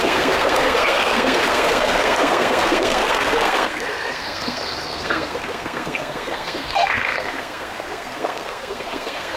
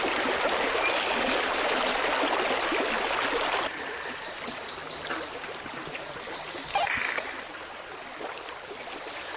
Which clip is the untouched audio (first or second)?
second